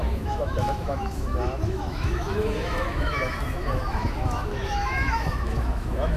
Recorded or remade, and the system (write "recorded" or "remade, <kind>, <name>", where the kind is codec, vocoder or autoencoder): remade, autoencoder, DAC-VAE